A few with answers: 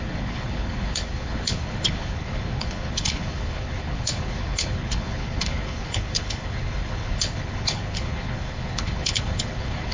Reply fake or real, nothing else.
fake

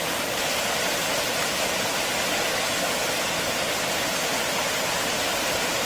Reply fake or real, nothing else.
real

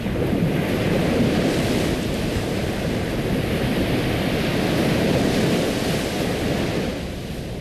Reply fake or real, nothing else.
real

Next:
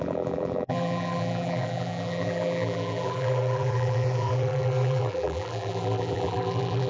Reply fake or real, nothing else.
fake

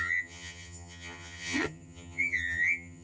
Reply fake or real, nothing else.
fake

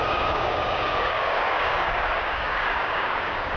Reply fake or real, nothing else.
fake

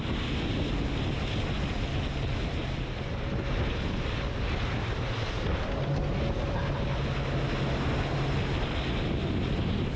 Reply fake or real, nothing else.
real